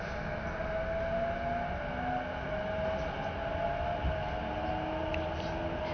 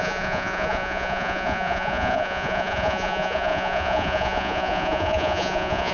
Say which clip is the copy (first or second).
second